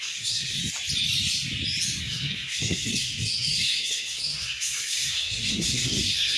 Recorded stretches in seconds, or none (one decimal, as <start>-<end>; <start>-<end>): 0.6-2.0